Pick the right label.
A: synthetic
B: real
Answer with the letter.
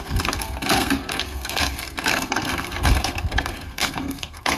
A